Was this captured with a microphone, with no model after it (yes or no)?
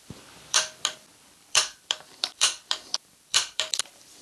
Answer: no